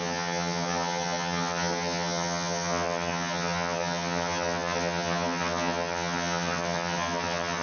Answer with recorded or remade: remade